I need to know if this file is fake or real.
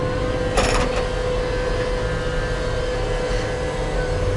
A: real